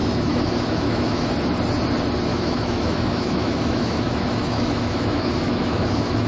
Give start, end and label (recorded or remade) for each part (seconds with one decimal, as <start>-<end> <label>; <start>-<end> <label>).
0.0-1.3 remade; 1.3-2.3 recorded; 2.3-6.3 remade